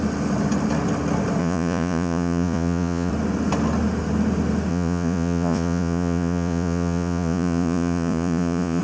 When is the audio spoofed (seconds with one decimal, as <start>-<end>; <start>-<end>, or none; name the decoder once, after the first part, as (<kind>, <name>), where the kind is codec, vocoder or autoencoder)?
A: 1.4-3.1 (vocoder, Vocos); 4.7-8.8

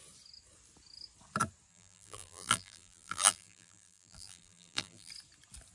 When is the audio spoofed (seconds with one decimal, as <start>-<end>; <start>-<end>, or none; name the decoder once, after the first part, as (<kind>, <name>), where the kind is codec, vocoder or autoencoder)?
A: 1.7-5.1 (vocoder, BigVGAN v2)

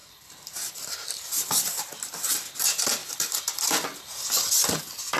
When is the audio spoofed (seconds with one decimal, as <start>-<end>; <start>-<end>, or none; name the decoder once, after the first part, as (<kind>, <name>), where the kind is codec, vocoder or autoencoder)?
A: 0.0-1.8 (vocoder, BigVGAN v2); 3.0-4.8

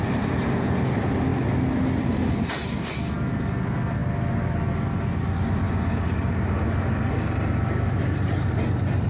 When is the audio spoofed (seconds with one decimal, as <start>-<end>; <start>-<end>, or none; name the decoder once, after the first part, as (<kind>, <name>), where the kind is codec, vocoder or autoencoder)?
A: none

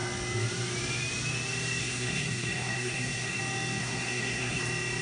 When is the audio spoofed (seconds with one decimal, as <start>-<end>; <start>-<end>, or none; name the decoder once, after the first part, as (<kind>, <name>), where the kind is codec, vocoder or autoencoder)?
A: 1.8-3.4 (codec, SNAC); 3.8-4.6

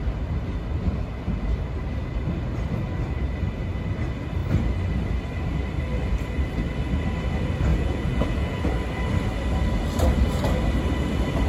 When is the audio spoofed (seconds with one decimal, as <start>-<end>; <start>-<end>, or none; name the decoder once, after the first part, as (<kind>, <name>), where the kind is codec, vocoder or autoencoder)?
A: 7.7-8.6 (vocoder, Vocos)

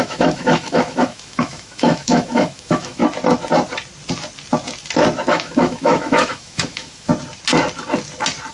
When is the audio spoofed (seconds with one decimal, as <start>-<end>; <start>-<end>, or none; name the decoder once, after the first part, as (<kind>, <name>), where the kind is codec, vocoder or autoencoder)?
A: 0.0-3.0 (autoencoder, DAC-VAE); 5.3-7.1